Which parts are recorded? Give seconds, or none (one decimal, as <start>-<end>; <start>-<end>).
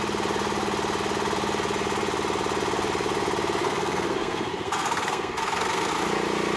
0.0-3.6; 5.9-6.6